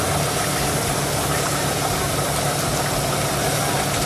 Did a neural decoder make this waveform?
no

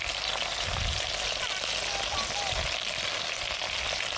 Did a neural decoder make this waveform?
no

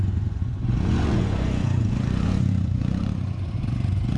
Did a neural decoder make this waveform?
yes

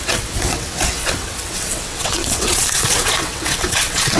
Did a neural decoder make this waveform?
yes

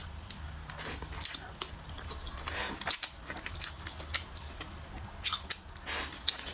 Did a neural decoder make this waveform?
no